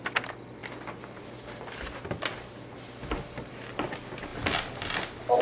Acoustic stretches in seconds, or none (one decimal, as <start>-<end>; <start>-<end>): 0.0-5.4